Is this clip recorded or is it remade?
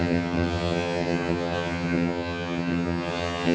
remade